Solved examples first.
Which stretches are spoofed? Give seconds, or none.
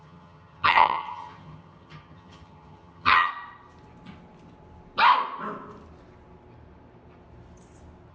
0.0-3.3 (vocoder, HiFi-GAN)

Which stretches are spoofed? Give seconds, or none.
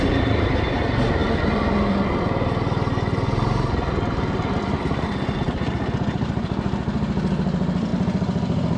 0.0-1.2 (vocoder, BigVGAN v2); 5.9-7.9